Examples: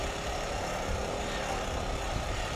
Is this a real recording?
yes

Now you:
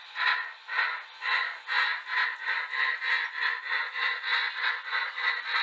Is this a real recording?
yes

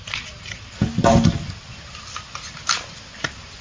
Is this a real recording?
yes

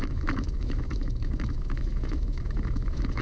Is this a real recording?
no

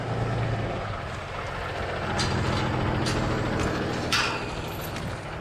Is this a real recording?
yes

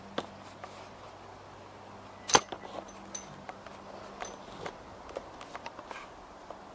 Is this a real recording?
yes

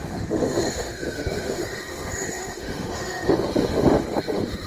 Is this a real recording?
no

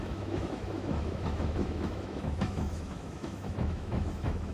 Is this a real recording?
no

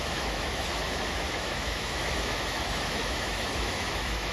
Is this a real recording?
no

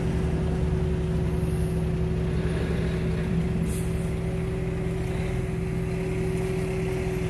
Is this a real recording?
yes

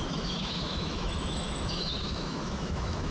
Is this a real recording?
no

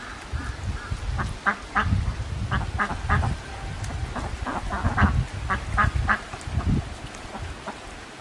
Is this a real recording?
yes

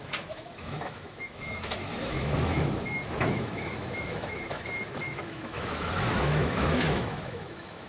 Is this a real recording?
no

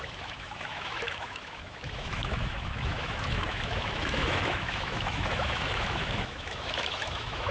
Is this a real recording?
no